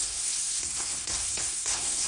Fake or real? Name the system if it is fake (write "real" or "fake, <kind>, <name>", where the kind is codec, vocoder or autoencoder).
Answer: fake, codec, SNAC